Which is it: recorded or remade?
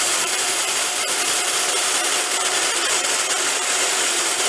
recorded